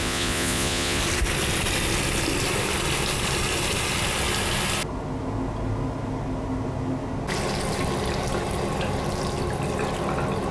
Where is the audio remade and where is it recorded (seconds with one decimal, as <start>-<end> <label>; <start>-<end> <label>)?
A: 0.0-1.0 remade; 1.0-10.5 recorded